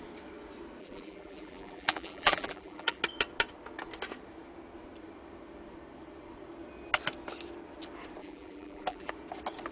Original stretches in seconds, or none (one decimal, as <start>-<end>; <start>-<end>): 0.0-0.8; 3.0-8.2; 9.1-9.7